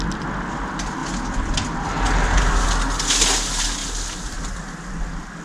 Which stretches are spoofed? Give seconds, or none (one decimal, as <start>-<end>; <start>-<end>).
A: none